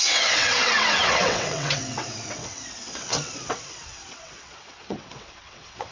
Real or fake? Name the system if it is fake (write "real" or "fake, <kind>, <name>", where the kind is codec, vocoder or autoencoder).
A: fake, vocoder, WaveNeXt